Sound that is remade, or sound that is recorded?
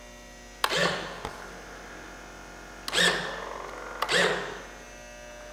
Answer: recorded